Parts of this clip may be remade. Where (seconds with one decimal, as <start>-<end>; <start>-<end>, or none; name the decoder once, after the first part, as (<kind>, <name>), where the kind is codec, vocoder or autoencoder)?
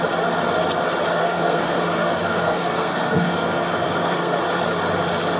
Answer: 1.2-4.4 (codec, SNAC)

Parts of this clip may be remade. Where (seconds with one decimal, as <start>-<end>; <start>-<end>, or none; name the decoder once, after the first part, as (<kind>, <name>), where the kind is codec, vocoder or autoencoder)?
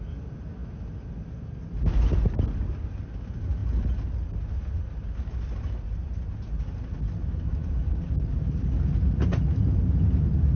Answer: none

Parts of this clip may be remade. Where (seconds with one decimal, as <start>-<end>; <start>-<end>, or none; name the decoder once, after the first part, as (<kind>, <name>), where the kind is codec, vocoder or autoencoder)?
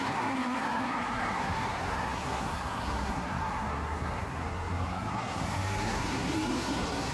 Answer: 0.0-7.1 (codec, SNAC)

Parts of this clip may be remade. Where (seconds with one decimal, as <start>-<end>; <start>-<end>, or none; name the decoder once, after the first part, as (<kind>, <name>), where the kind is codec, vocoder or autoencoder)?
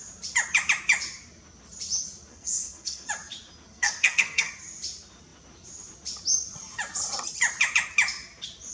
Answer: 2.3-3.1 (codec, SNAC); 3.7-4.5